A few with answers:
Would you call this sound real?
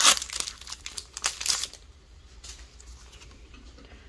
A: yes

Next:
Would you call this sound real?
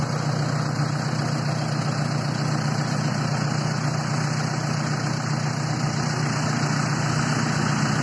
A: yes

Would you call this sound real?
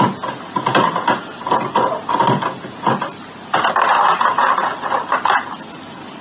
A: yes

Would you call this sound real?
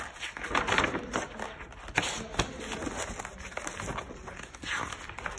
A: yes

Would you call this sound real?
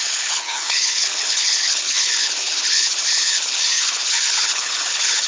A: no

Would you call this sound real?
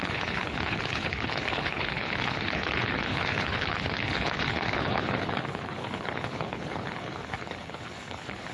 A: no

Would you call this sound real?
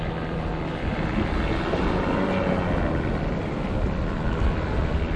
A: yes